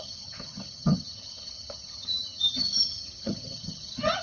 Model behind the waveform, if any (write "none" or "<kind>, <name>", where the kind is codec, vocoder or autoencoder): vocoder, HiFi-GAN